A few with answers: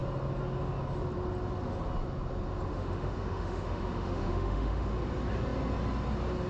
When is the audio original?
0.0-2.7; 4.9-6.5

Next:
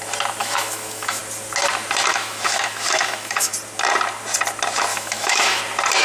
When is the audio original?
0.0-0.4; 1.2-2.1; 3.5-4.9; 5.6-6.0

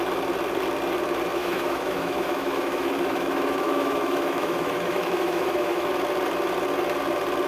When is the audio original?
0.0-1.4; 5.9-7.5

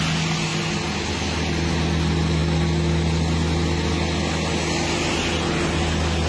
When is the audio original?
0.0-6.3

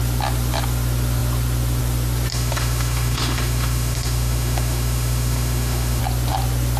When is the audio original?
0.0-2.3; 6.0-6.8

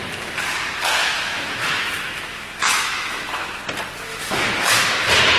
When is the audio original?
0.0-1.0; 3.6-4.1; 4.7-5.4

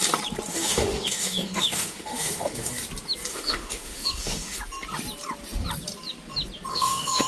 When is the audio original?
0.0-0.5; 2.7-3.3; 4.6-6.7

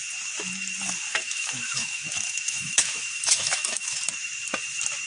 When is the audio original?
0.0-1.1; 4.0-5.1